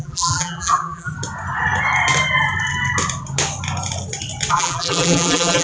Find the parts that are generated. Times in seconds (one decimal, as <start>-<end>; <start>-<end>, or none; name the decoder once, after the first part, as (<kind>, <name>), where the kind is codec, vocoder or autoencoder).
0.0-1.1 (vocoder, BigVGAN v2); 4.5-5.6